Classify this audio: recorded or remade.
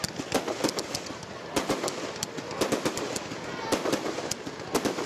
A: recorded